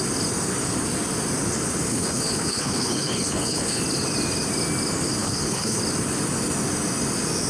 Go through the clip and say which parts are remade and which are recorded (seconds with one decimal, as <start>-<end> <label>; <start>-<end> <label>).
0.0-1.9 recorded; 1.9-3.8 remade; 3.8-5.2 recorded; 5.2-5.8 remade; 5.8-7.5 recorded